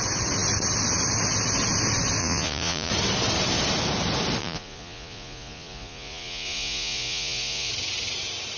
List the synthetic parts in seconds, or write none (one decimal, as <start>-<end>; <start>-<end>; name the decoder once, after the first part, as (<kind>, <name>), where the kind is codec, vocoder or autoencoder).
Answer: 2.2-2.9 (vocoder, Vocos); 4.4-7.7